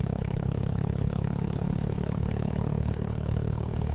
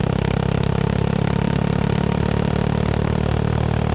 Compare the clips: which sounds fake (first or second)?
first